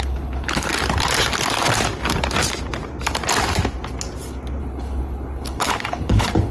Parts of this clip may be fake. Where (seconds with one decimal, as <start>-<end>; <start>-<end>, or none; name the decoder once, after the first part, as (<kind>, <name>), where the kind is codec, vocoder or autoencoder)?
0.0-0.7 (codec, HILCodec); 4.6-6.5